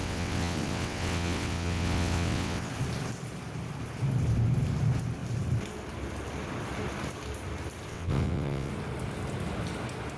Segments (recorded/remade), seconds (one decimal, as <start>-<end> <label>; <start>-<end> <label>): 0.0-2.7 remade; 2.7-7.9 recorded; 7.9-8.7 remade; 8.7-10.2 recorded